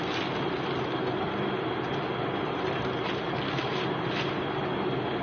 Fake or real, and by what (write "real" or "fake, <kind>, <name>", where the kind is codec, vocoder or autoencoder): real